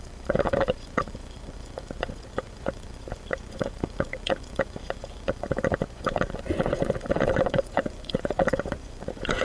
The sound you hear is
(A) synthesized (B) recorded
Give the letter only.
A